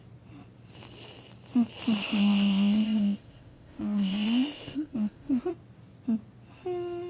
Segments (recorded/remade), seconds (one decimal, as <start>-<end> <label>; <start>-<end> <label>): 0.0-2.0 recorded; 2.0-5.5 remade; 5.5-7.1 recorded